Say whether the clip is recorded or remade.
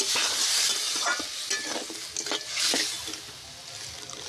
recorded